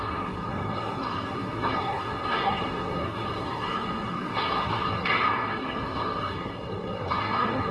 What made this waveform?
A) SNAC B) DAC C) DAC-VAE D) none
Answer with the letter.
A